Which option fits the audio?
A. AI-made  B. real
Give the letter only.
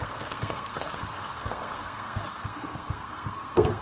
A